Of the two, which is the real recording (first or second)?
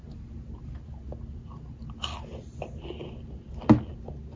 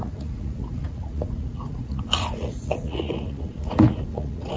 first